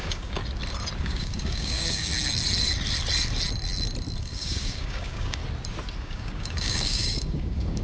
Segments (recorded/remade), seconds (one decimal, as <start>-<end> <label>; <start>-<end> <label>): 0.0-0.4 remade; 0.4-1.0 recorded; 1.0-2.1 remade; 2.1-4.2 recorded; 4.2-5.4 remade; 5.4-6.0 recorded; 6.0-7.8 remade